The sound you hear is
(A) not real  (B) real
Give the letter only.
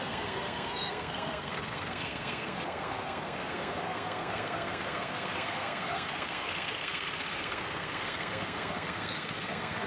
A